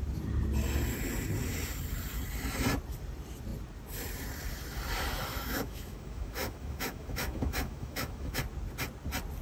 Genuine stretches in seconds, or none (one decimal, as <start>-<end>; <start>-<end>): 0.0-5.3; 8.4-9.4